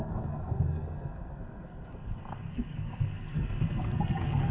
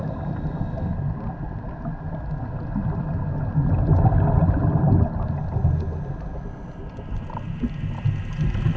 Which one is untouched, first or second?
second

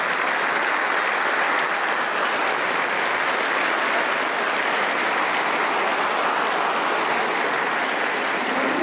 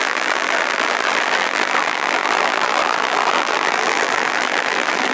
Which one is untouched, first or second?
first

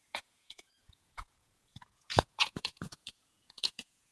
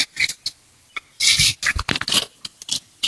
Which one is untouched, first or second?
second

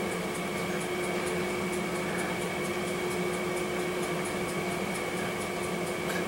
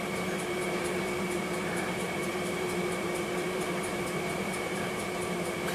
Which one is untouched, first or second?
first